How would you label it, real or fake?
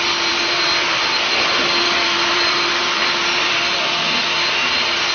fake